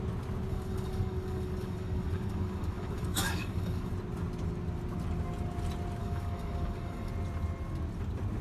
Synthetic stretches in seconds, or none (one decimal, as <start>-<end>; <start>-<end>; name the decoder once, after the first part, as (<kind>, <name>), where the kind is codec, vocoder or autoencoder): 0.5-3.9 (codec, DAC); 6.0-7.1